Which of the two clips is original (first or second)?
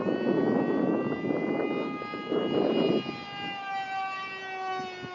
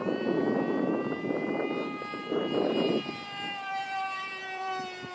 first